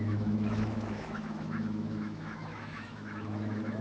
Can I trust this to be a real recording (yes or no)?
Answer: no